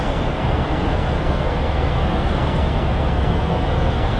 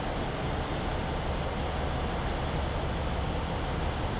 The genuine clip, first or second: second